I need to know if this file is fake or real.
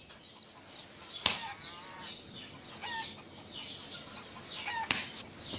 real